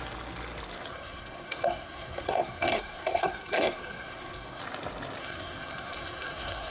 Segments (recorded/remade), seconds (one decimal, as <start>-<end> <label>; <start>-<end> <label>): 0.0-0.9 recorded; 0.9-4.6 remade; 4.6-5.2 recorded; 5.2-6.7 remade